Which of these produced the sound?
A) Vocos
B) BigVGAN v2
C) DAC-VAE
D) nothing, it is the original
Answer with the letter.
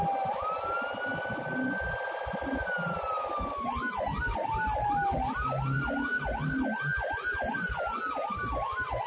D